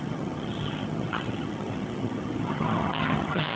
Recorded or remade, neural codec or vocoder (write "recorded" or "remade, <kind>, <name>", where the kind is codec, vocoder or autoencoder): remade, vocoder, HiFi-GAN